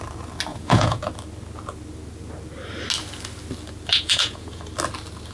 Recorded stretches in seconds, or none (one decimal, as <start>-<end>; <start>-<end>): 0.0-0.5; 1.0-3.9; 4.6-5.3